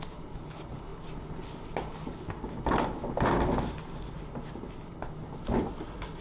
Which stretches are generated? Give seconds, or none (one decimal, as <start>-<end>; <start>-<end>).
none